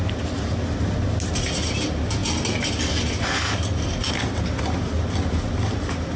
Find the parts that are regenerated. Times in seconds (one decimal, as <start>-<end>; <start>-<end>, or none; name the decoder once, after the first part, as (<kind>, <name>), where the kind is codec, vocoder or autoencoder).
none

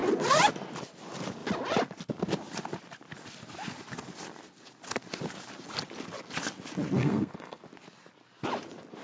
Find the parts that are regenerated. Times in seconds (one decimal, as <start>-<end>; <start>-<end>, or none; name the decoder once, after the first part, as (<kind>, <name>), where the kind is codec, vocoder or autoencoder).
7.0-7.6 (codec, SNAC)

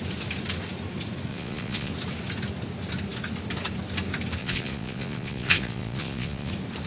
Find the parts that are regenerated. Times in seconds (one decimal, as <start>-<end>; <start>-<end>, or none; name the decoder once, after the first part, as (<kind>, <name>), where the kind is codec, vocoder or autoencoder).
1.3-1.9 (vocoder, Vocos); 4.4-6.5

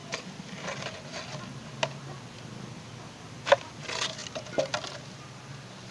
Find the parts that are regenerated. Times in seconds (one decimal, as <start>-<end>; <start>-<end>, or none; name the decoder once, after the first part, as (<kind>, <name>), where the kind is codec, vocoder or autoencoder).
none